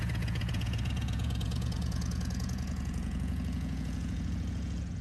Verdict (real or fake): fake